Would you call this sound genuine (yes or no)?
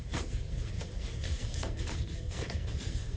no